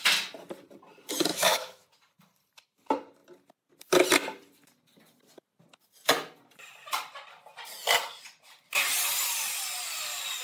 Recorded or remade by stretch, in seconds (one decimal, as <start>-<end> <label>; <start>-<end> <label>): 0.0-1.3 recorded; 1.3-1.9 remade; 1.9-10.4 recorded